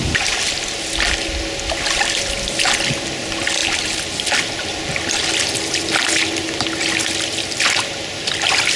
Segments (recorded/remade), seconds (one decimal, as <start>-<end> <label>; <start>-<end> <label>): 0.0-3.6 recorded; 3.6-4.4 remade; 4.4-8.8 recorded